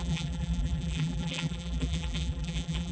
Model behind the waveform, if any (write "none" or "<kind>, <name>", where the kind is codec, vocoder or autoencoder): vocoder, BigVGAN v2